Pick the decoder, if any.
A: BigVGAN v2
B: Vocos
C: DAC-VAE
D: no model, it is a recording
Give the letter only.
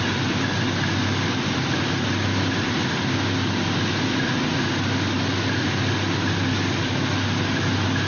D